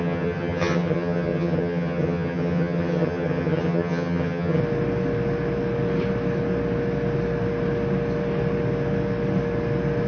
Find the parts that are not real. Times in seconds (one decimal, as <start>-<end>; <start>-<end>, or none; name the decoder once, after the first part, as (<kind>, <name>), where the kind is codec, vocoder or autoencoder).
0.0-4.6 (vocoder, HiFi-GAN)